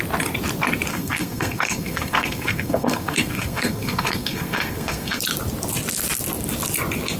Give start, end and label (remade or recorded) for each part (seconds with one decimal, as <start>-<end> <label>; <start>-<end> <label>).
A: 0.0-0.9 recorded; 0.9-5.2 remade; 5.2-7.2 recorded